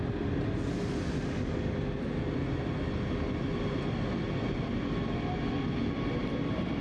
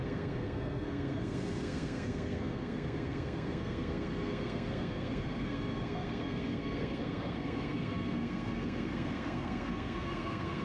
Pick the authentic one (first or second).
first